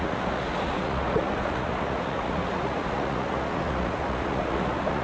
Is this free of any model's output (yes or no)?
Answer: no